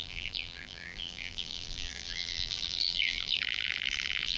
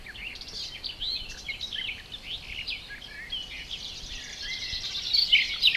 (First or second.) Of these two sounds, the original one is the second